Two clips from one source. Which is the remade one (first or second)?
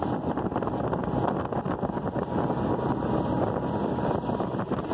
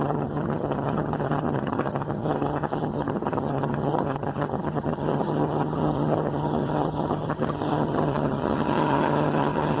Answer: second